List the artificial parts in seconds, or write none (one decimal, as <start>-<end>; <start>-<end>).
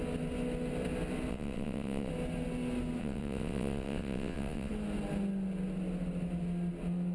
1.3-2.1; 3.0-4.7